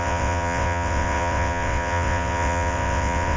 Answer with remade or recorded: remade